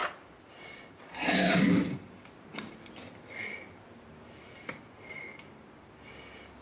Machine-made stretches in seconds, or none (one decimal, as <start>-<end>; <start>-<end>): none